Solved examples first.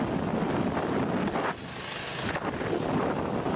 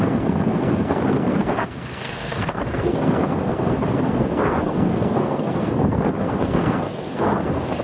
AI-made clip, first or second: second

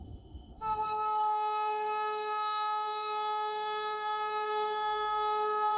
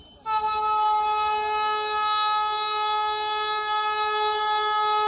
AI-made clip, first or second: first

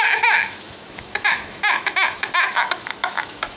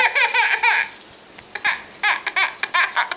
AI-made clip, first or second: first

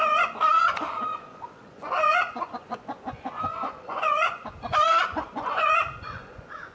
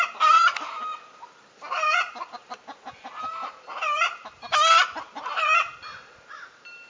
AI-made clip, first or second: first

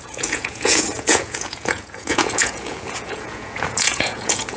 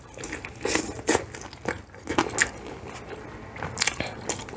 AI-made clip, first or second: first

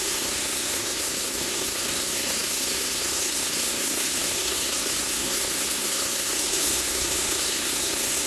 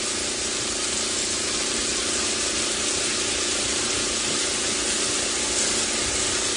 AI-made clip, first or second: first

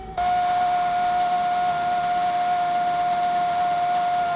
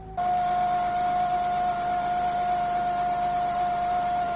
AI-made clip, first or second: first